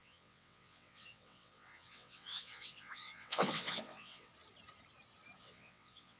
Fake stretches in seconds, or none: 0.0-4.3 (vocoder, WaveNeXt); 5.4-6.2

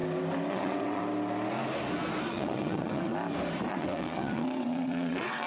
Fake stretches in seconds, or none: 0.5-1.0 (vocoder, WaveNeXt); 2.3-3.1; 3.7-5.5